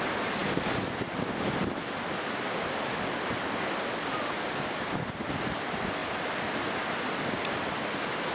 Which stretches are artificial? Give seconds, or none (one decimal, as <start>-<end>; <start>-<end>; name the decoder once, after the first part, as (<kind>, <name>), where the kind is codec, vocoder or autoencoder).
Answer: none